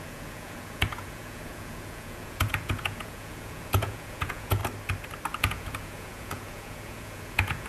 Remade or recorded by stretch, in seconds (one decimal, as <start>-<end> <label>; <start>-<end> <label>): 0.0-4.6 remade; 4.6-5.4 recorded; 5.4-7.7 remade